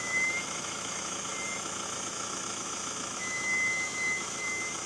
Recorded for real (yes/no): no